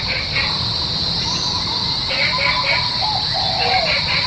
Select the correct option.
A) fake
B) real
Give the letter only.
B